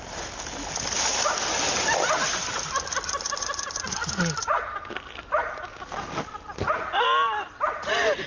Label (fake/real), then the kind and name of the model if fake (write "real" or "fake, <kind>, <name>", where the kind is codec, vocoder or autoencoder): real